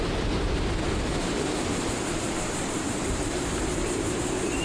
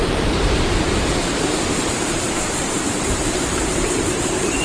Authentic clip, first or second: first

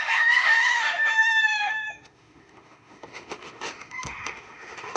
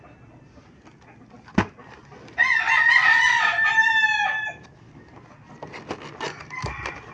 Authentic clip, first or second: second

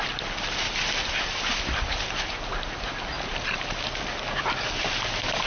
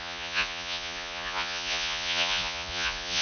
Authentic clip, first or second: first